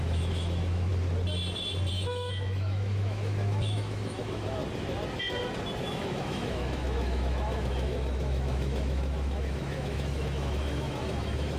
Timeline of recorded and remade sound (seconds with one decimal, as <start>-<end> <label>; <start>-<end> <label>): 0.0-0.9 remade; 0.9-1.9 recorded; 1.9-4.6 remade; 4.6-5.8 recorded; 5.8-11.6 remade